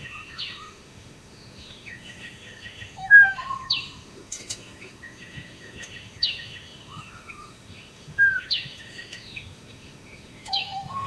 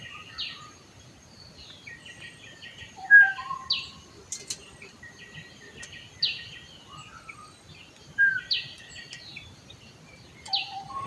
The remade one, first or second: first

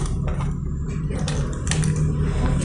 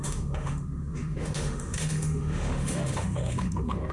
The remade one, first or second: second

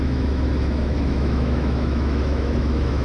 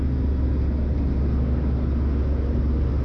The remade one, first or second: first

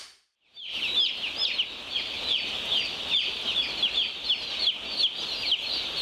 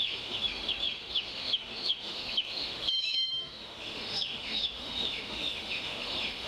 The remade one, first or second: second